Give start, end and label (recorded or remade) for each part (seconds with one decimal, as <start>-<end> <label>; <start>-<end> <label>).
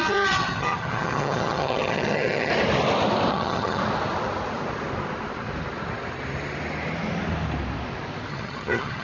0.0-2.5 remade; 2.5-3.3 recorded; 3.3-3.8 remade; 3.8-8.3 recorded; 8.3-9.0 remade